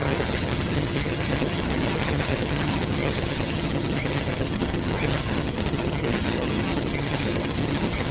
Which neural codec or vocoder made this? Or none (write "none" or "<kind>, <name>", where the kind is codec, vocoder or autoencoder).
vocoder, HiFi-GAN